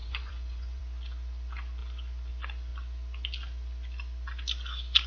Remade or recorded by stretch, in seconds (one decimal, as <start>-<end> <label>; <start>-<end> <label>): 0.0-0.8 remade; 0.8-5.1 recorded

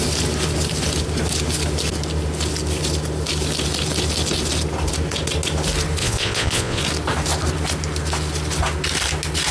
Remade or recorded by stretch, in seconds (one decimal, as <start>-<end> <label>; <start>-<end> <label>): 0.0-6.0 recorded; 6.0-6.8 remade; 6.8-9.5 recorded

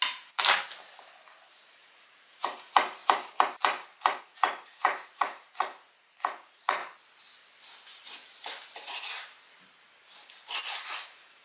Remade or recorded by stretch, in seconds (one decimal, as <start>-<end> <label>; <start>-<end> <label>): 0.0-1.5 recorded; 1.5-3.0 remade; 3.0-4.2 recorded; 4.2-6.8 remade; 6.8-10.6 recorded; 10.6-11.4 remade